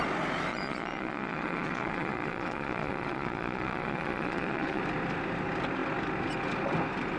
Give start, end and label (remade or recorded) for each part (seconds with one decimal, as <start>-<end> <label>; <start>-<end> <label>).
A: 0.0-0.5 recorded; 0.5-4.8 remade; 4.8-7.2 recorded